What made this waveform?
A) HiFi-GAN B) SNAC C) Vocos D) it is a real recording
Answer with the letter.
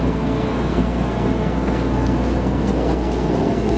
B